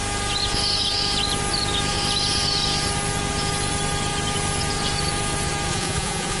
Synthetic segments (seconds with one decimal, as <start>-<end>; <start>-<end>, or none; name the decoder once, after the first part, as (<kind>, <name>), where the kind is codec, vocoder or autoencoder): 5.7-6.4 (vocoder, Vocos)